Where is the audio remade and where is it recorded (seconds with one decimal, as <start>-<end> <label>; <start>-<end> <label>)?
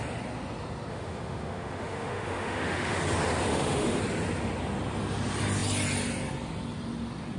0.0-0.9 recorded; 0.9-3.0 remade; 3.0-3.5 recorded; 3.5-4.0 remade; 4.0-7.4 recorded